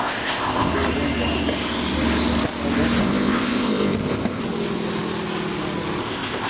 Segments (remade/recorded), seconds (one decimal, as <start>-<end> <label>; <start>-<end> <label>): 0.0-0.7 remade; 0.7-3.0 recorded; 3.0-4.4 remade; 4.4-6.0 recorded; 6.0-6.5 remade